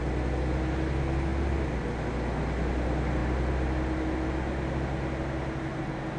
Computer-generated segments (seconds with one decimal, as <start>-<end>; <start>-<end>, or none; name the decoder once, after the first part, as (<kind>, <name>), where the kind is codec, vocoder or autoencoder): none